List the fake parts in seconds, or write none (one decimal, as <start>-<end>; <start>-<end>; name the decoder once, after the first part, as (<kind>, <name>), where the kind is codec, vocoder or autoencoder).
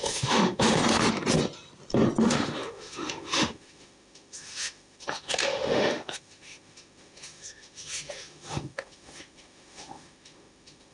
0.0-0.8 (autoencoder, DAC-VAE); 2.2-10.9